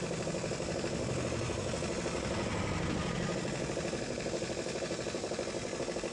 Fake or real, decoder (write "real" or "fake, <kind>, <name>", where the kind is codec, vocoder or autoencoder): real